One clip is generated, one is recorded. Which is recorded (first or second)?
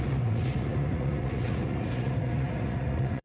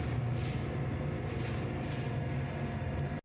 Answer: second